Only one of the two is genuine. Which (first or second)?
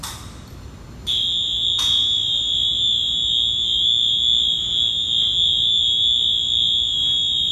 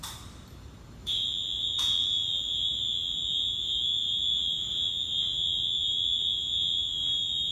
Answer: first